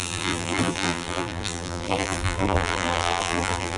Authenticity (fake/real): fake